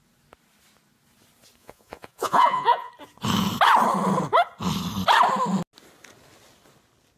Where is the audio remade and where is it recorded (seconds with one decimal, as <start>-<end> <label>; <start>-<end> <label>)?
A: 0.0-1.6 recorded; 1.6-2.9 remade; 2.9-7.2 recorded